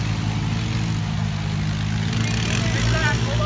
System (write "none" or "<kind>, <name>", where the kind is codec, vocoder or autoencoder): none